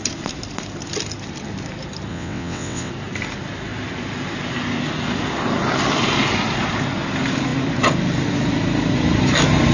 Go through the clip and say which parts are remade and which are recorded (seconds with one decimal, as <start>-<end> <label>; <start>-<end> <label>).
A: 0.0-2.1 recorded; 2.1-2.9 remade; 2.9-9.7 recorded